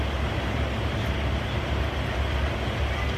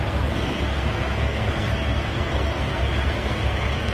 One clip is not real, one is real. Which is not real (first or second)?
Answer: second